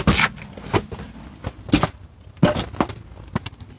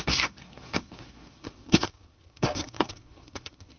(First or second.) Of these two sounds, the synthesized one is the second